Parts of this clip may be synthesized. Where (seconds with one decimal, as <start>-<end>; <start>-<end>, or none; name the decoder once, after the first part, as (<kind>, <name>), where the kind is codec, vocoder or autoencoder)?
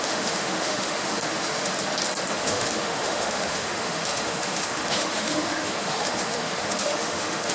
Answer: 0.0-1.7 (autoencoder, DAC-VAE); 2.4-7.5